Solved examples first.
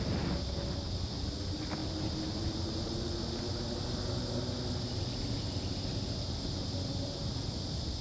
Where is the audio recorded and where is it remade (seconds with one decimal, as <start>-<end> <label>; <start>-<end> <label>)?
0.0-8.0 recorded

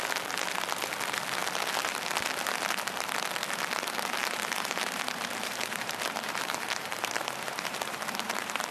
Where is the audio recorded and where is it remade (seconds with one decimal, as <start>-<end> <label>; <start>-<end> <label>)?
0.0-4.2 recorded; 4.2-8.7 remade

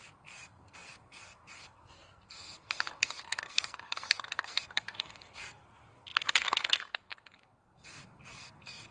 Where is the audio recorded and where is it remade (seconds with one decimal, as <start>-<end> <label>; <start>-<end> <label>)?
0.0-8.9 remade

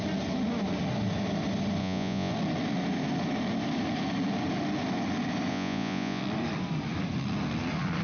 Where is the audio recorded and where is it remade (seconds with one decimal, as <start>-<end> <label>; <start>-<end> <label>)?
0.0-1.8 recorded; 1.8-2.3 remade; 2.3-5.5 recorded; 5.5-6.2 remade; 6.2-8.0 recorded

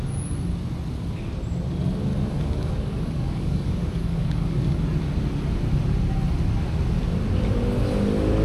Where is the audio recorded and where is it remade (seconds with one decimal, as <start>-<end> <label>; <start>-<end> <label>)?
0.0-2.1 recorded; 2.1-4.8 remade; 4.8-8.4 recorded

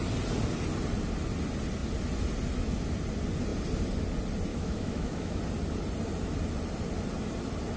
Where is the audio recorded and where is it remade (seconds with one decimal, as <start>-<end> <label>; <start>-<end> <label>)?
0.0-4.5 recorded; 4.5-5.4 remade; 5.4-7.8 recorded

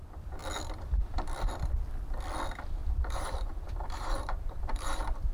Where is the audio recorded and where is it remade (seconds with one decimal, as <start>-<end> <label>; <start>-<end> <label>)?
0.0-2.8 recorded; 2.8-5.3 remade

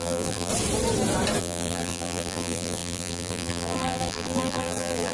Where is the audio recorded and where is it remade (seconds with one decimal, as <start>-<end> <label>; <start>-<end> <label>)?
0.0-0.5 remade; 0.5-1.4 recorded; 1.4-5.1 remade